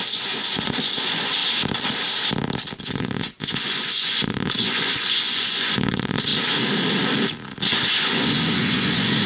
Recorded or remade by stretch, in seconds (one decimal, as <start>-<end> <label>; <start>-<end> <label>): 0.0-1.4 remade; 1.4-2.8 recorded; 2.8-6.3 remade; 6.3-7.9 recorded; 7.9-9.3 remade